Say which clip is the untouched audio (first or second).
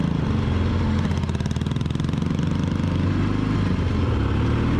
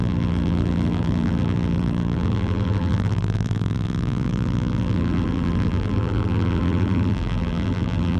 first